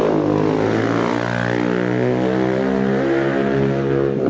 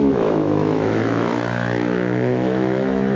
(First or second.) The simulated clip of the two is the second